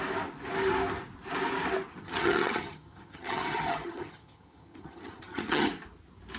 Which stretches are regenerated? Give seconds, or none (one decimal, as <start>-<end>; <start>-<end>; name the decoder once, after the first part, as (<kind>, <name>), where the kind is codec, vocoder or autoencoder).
1.9-5.7 (vocoder, HiFi-GAN)